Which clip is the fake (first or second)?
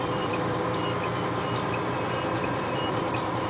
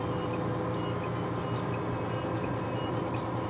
first